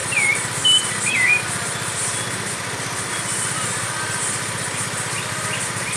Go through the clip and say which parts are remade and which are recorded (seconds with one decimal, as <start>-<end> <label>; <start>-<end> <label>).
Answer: 0.0-6.0 recorded